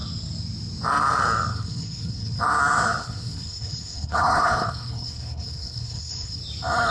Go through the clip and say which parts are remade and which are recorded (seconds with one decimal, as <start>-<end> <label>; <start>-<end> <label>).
0.0-1.5 recorded; 1.5-2.4 remade; 2.4-3.0 recorded; 3.0-6.4 remade; 6.4-6.9 recorded